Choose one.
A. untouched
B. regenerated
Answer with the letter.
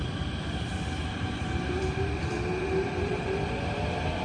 B